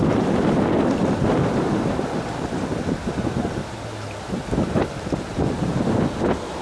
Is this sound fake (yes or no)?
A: no